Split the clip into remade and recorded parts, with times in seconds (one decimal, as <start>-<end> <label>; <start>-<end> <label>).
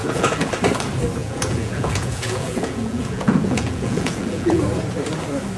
0.0-0.5 remade; 0.5-1.2 recorded; 1.2-4.6 remade; 4.6-5.6 recorded